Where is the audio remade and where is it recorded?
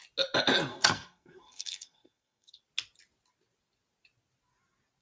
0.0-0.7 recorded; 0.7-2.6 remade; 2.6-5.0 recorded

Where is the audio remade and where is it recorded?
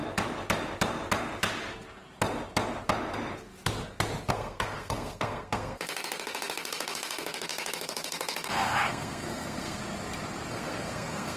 0.0-4.3 recorded; 4.3-9.8 remade; 9.8-10.5 recorded; 10.5-11.4 remade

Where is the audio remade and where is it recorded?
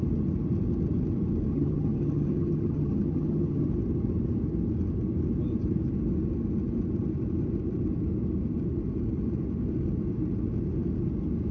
0.0-1.5 recorded; 1.5-3.7 remade; 3.7-11.5 recorded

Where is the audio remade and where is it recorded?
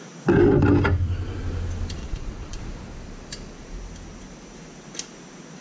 0.0-2.0 recorded; 2.0-2.6 remade; 2.6-5.6 recorded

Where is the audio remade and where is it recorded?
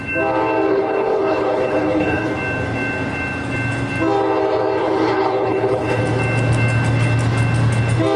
0.0-0.7 recorded; 0.7-2.3 remade; 2.3-4.8 recorded; 4.8-6.0 remade; 6.0-8.2 recorded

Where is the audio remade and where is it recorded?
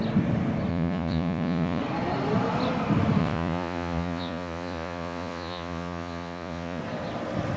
0.0-0.7 recorded; 0.7-1.8 remade; 1.8-3.2 recorded; 3.2-6.8 remade; 6.8-7.6 recorded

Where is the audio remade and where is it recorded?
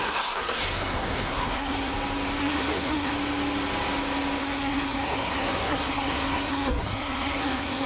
0.0-1.9 remade; 1.9-2.4 recorded; 2.4-3.1 remade; 3.1-4.4 recorded; 4.4-7.9 remade